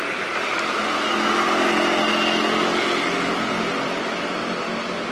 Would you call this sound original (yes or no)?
yes